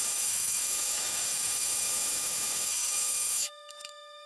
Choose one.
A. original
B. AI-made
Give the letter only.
B